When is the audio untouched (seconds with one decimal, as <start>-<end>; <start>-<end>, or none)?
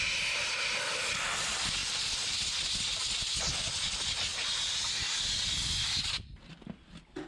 0.0-7.3